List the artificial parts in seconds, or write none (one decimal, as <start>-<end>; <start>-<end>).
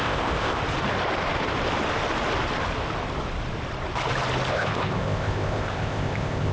0.0-0.6; 4.5-6.5